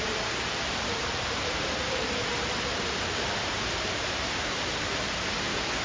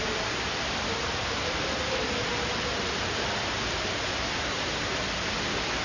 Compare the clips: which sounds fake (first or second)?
first